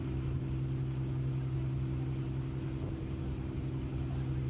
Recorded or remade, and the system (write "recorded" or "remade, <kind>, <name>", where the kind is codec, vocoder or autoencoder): recorded